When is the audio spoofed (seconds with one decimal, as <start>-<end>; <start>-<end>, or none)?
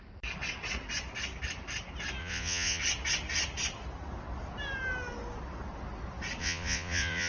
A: 2.2-2.8; 6.4-7.3